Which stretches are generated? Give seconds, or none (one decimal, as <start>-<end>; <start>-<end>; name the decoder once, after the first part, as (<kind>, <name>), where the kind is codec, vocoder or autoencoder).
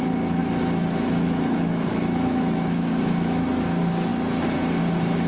0.4-3.6 (autoencoder, DAC-VAE)